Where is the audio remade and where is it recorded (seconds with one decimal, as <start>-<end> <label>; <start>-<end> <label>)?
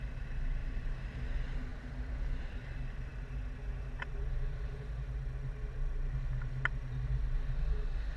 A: 0.0-0.6 recorded; 0.6-1.2 remade; 1.2-1.7 recorded; 1.7-2.6 remade; 2.6-8.2 recorded